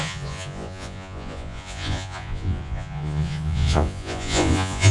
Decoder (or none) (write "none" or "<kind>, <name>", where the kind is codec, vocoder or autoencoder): vocoder, Vocos